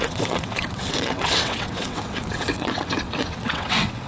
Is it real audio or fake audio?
fake